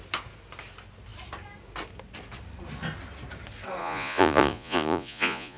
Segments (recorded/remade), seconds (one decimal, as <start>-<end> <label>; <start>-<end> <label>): 0.0-3.8 recorded; 3.8-5.6 remade